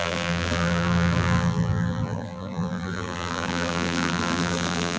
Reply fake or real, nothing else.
fake